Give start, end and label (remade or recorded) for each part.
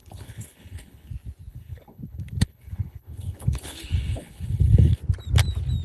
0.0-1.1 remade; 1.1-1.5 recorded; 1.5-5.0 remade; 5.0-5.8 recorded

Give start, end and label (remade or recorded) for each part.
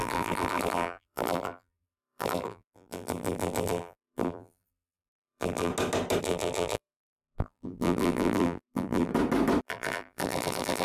0.0-5.7 remade; 5.7-6.2 recorded; 6.2-9.1 remade; 9.1-9.6 recorded; 9.6-10.8 remade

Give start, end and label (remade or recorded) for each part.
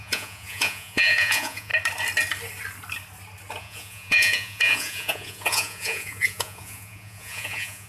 0.0-1.7 remade; 1.7-3.6 recorded; 3.6-7.9 remade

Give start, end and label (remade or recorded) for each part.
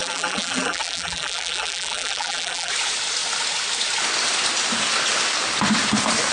0.0-2.7 remade; 2.7-6.3 recorded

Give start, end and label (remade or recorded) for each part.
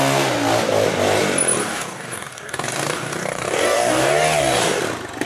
0.0-1.6 recorded; 1.6-4.8 remade; 4.8-5.3 recorded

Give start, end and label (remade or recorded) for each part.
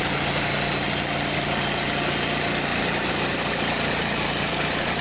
0.0-5.0 recorded